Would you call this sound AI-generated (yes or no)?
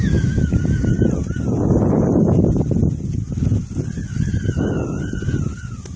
no